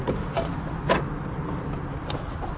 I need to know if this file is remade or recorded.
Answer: recorded